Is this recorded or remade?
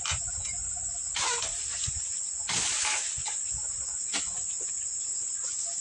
recorded